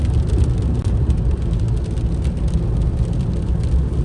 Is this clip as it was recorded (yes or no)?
yes